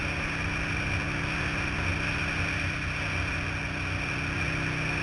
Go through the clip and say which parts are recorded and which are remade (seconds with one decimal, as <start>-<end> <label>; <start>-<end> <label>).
0.0-5.0 recorded